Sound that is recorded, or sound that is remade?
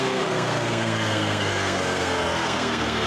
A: remade